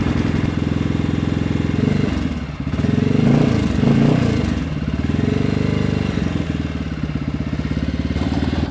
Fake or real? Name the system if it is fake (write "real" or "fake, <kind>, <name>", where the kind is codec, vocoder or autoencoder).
real